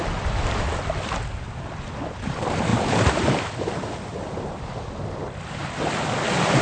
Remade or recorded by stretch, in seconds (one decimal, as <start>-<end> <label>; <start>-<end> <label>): 0.0-6.6 recorded